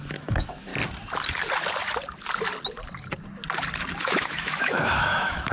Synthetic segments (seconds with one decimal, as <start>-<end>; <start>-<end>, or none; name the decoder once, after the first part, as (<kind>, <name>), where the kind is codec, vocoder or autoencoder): 0.0-0.7 (autoencoder, DAC-VAE); 4.0-5.5

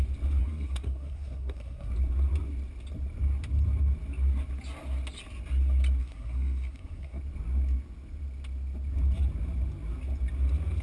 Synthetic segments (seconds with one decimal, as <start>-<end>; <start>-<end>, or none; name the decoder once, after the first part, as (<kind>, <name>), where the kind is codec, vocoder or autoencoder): 0.4-1.9 (codec, SNAC); 6.0-7.2

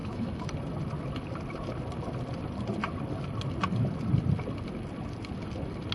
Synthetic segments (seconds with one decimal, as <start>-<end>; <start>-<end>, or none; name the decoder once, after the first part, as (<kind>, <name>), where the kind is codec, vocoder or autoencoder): 0.0-0.5 (autoencoder, DAC-VAE)

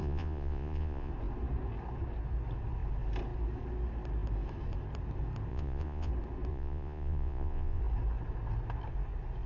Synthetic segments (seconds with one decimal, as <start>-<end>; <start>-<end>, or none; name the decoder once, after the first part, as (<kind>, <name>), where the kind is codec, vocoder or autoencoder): 0.0-1.1 (vocoder, Vocos); 5.5-6.1; 6.5-7.8

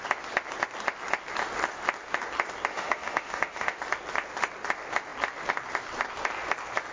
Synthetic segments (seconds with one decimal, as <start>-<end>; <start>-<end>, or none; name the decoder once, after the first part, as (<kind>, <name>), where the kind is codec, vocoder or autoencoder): 2.7-3.8 (autoencoder, DAC-VAE)

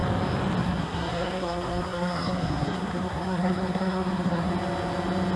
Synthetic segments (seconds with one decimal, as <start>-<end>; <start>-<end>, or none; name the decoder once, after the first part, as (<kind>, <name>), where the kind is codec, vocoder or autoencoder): 0.6-4.5 (codec, SNAC)